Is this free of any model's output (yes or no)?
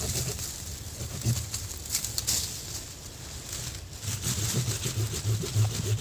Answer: yes